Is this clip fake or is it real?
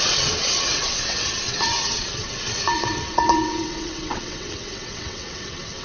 fake